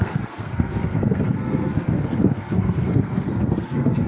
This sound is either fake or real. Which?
fake